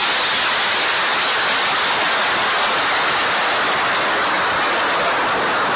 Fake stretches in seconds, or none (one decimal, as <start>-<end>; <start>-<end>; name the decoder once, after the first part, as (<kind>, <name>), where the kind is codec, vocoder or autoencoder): none